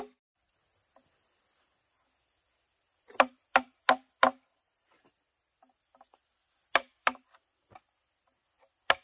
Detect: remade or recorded recorded